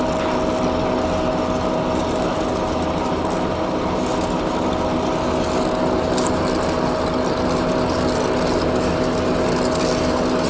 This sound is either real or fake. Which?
real